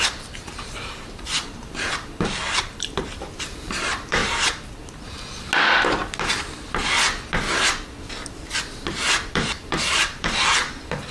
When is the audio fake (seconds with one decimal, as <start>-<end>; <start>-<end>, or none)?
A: 0.0-4.2; 9.3-11.1